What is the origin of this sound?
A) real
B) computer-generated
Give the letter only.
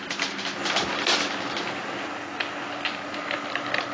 A